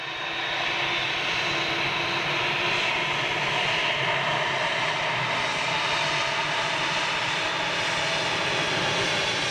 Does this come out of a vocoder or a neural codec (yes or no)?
no